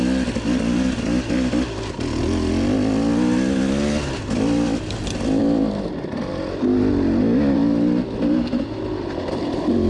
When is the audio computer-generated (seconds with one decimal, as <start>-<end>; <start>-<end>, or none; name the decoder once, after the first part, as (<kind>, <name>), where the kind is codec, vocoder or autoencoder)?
none